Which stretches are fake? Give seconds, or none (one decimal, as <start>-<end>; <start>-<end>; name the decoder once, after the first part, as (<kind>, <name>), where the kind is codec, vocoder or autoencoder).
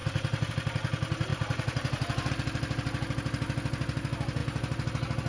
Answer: 0.0-0.5 (vocoder, BigVGAN v2); 1.3-2.3